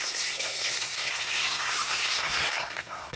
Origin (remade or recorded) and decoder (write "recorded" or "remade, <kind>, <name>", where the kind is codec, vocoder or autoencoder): remade, codec, SNAC